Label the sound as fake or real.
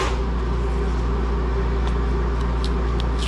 real